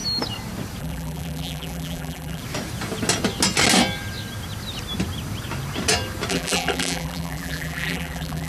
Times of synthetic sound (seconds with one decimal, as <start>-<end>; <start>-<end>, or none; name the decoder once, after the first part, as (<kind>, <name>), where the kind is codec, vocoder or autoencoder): 0.8-2.4 (vocoder, BigVGAN v2); 6.3-8.5